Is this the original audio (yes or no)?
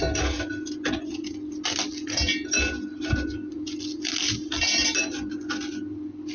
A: yes